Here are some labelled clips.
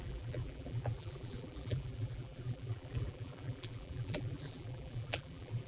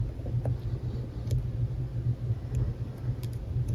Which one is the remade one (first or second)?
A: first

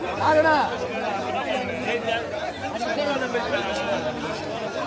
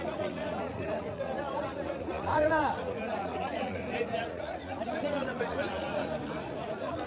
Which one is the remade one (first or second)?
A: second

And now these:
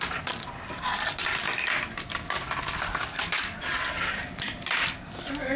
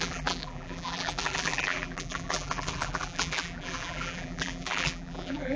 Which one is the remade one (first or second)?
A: second